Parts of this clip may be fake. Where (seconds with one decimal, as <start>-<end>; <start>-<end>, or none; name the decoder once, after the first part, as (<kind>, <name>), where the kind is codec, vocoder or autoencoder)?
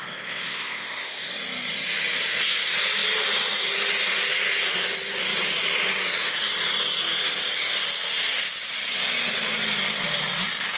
0.0-1.3 (codec, ZipCodec)